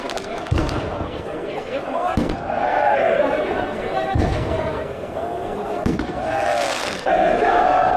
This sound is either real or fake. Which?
fake